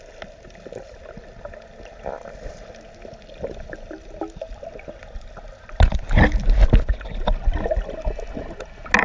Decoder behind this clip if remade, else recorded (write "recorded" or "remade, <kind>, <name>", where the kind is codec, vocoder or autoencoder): recorded